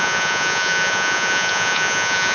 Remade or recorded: remade